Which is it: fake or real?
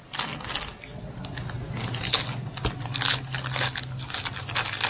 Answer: real